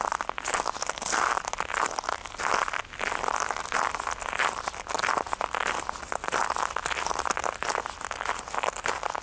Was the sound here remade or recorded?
recorded